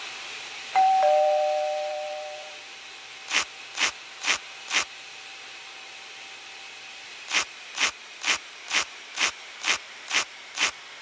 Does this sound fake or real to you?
fake